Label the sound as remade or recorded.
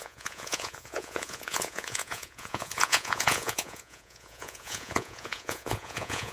remade